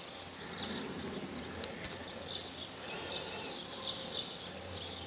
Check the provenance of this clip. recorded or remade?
recorded